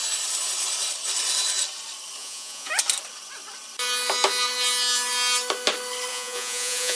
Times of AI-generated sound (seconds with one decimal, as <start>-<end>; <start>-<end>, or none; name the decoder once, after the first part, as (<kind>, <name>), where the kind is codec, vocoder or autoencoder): 2.2-2.7 (vocoder, Vocos); 6.1-7.0